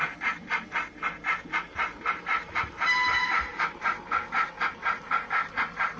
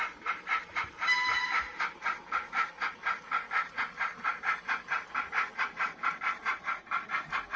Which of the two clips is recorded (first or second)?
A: first